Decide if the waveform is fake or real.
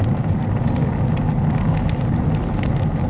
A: real